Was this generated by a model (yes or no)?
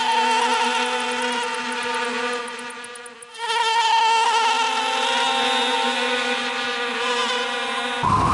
no